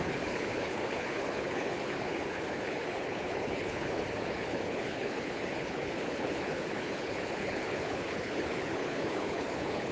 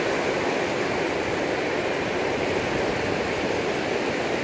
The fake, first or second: first